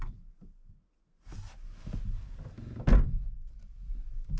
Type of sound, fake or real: real